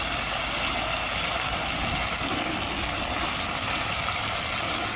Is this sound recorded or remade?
recorded